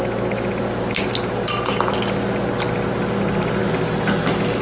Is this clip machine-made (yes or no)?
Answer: no